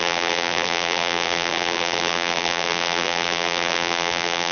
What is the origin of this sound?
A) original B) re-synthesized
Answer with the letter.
B